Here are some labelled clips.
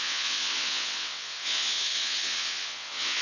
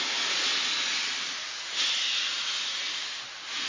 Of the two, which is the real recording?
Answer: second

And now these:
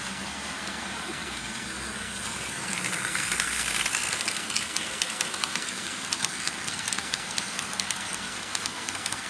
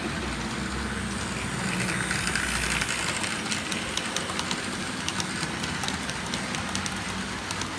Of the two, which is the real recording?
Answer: second